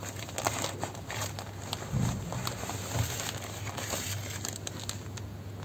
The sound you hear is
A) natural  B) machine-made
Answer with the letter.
A